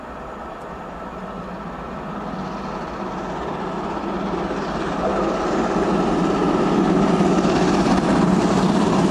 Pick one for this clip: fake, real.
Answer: real